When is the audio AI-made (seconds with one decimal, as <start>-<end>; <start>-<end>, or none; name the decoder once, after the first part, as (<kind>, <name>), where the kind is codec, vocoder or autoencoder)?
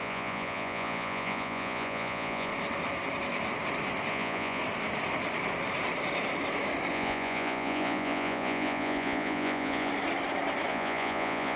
0.0-2.5 (vocoder, Vocos); 4.1-4.6; 6.9-9.9; 10.7-11.6